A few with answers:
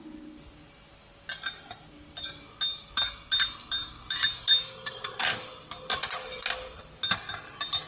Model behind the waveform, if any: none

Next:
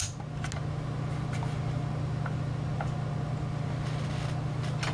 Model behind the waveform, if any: none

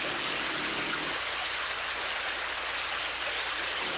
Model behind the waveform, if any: none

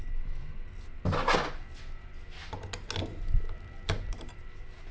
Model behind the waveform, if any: none